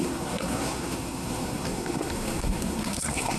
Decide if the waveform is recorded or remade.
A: remade